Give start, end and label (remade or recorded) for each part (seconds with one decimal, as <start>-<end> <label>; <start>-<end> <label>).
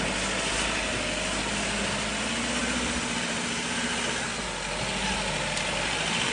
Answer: 0.0-6.3 recorded